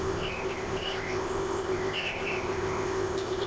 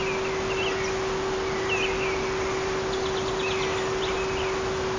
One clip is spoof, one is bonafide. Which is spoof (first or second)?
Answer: first